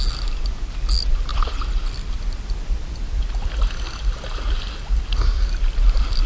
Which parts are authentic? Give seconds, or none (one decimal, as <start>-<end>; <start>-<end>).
0.0-1.3; 3.5-6.3